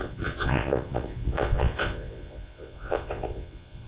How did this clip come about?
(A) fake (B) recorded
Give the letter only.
A